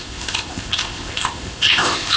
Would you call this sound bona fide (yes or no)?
no